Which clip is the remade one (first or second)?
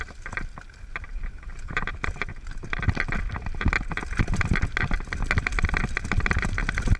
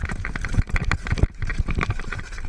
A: second